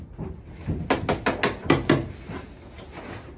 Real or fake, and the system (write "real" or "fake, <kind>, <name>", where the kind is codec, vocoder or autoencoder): real